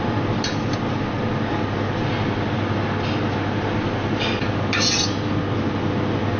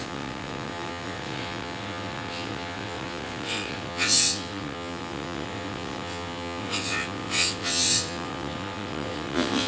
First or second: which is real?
first